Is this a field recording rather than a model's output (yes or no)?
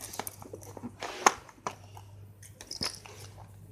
yes